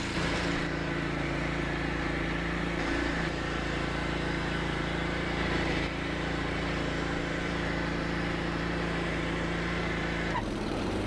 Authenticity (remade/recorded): remade